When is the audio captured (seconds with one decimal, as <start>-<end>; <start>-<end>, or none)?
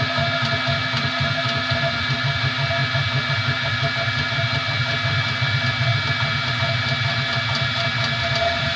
0.0-8.8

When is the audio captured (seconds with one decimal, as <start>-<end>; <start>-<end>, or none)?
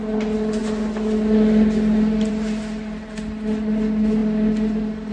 0.0-5.1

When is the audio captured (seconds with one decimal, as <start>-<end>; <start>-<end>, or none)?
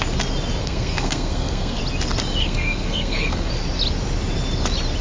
0.0-0.6; 1.8-2.4; 3.5-5.0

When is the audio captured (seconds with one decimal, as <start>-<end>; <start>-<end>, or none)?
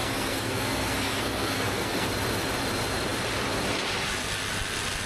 2.1-5.1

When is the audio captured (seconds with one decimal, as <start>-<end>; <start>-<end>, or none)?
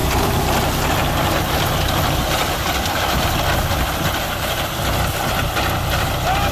0.0-6.5